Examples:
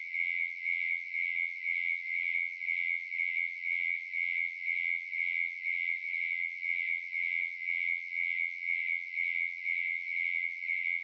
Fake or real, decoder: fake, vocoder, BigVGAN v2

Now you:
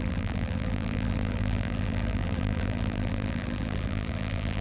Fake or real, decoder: fake, vocoder, BigVGAN v2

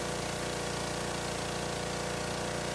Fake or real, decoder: real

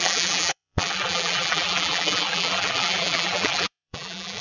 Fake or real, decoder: fake, vocoder, BigVGAN v2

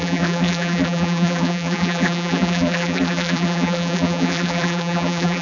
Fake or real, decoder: fake, vocoder, BigVGAN v2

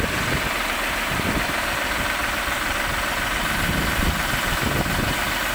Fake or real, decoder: fake, vocoder, BigVGAN v2